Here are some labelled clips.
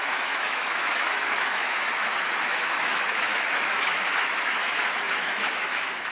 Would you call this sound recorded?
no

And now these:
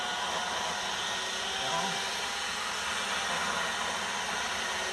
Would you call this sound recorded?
yes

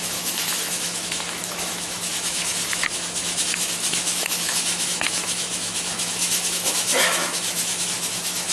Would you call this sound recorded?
no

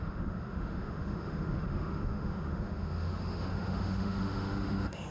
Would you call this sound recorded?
no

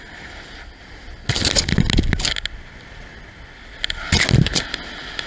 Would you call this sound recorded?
yes